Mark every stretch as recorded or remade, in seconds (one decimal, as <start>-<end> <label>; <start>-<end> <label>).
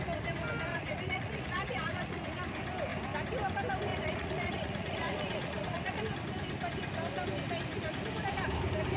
0.0-0.7 recorded; 0.7-2.3 remade; 2.3-3.9 recorded; 3.9-6.0 remade; 6.0-9.0 recorded